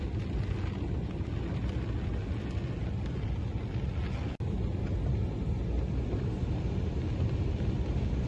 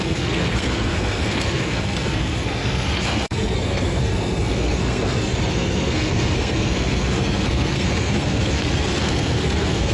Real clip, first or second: first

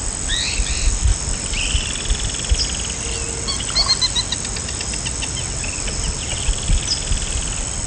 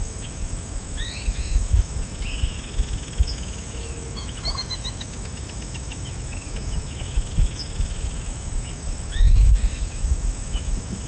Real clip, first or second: first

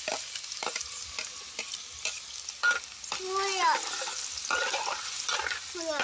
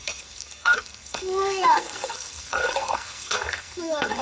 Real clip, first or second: first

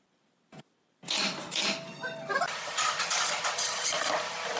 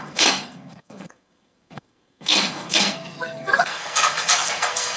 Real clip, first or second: first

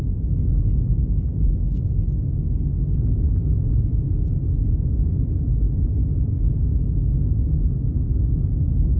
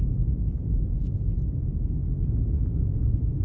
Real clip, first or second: first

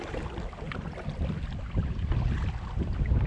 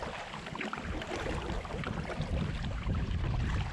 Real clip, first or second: first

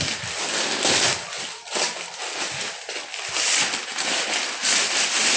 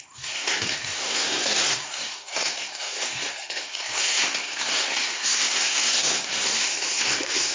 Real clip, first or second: first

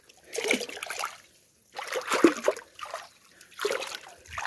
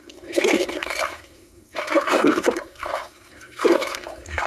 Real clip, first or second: first